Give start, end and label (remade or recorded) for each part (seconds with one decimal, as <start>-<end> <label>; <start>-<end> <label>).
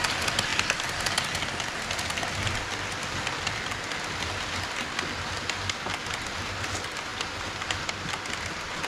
0.0-0.5 remade; 0.5-1.5 recorded; 1.5-8.9 remade